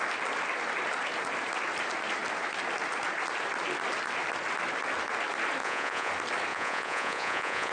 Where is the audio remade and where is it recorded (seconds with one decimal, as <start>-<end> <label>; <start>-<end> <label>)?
0.0-5.6 recorded; 5.6-6.1 remade; 6.1-6.5 recorded; 6.5-7.7 remade